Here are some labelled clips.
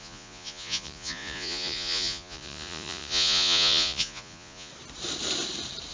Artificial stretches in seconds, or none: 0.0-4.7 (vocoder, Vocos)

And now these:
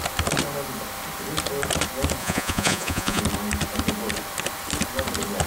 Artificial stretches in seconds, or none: 2.2-3.2 (vocoder, Vocos)

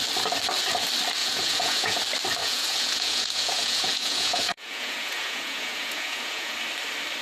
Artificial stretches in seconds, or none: 1.2-2.0 (vocoder, Vocos); 2.4-6.5

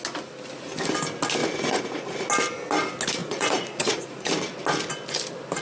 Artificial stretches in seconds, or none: 1.4-2.3 (vocoder, Vocos); 3.2-4.3

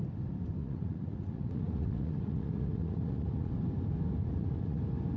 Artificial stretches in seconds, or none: 0.6-3.5 (vocoder, Vocos); 4.2-4.8

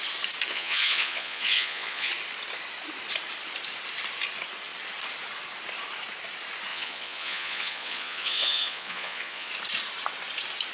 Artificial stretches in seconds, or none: 0.5-2.1 (vocoder, Vocos); 6.7-9.5

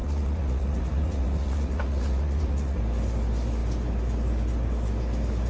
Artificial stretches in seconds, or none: 0.0-2.8 (vocoder, Vocos)